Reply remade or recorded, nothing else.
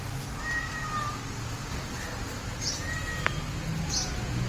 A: recorded